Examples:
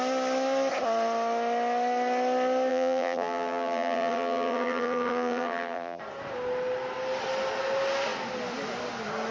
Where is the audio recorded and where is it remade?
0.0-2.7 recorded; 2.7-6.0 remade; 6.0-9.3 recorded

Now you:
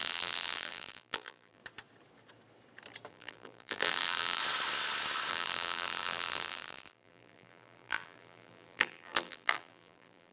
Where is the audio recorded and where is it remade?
0.0-1.6 remade; 1.6-3.1 recorded; 3.1-4.4 remade; 4.4-5.3 recorded; 5.3-10.3 remade

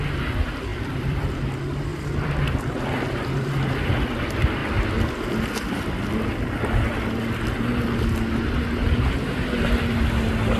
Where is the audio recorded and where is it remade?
0.0-0.7 recorded; 0.7-1.5 remade; 1.5-1.9 recorded; 1.9-3.5 remade; 3.5-10.6 recorded

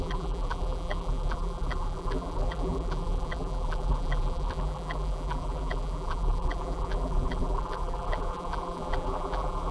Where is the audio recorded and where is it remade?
0.0-9.7 remade